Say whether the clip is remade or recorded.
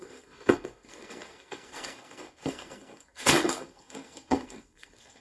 remade